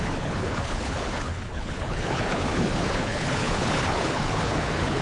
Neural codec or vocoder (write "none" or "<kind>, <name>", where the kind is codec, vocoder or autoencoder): codec, HILCodec